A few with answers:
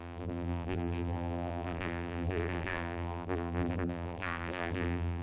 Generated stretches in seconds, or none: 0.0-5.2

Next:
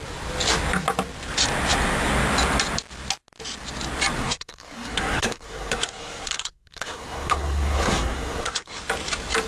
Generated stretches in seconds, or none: 4.2-8.8

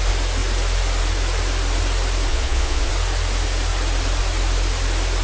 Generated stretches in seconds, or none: 2.3-2.9

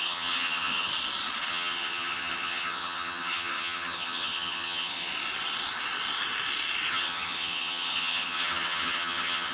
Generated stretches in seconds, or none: 0.0-0.9; 1.5-5.1; 6.9-9.5

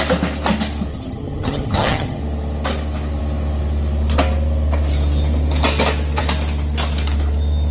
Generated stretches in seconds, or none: 0.9-2.2